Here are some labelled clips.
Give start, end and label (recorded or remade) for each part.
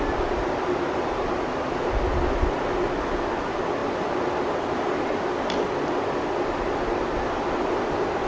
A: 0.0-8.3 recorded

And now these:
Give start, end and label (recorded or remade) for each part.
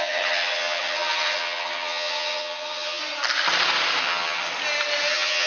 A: 0.0-3.0 remade; 3.0-4.0 recorded; 4.0-4.5 remade; 4.5-5.1 recorded; 5.1-5.5 remade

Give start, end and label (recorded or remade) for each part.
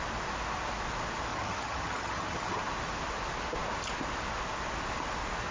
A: 0.0-1.3 recorded; 1.3-2.6 remade; 2.6-5.5 recorded